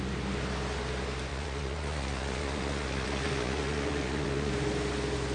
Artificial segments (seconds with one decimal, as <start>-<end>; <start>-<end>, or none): 1.3-4.5